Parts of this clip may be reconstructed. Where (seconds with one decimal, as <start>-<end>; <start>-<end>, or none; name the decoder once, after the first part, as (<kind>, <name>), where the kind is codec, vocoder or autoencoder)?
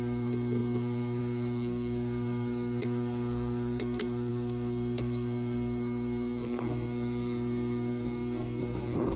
0.0-9.2 (codec, SNAC)